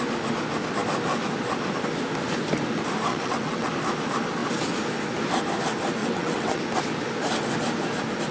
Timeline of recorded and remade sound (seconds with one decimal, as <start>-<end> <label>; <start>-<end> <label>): 0.0-3.1 recorded; 3.1-3.7 remade; 3.7-6.0 recorded; 6.0-6.6 remade; 6.6-8.3 recorded